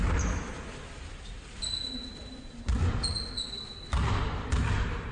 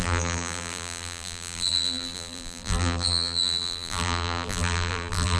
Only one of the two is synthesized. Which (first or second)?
second